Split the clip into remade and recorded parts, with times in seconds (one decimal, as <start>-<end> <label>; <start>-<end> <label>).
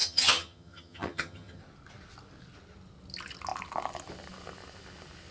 0.0-1.6 remade; 1.6-5.3 recorded